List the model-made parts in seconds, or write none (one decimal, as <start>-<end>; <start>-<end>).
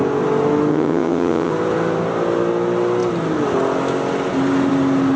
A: 0.7-1.5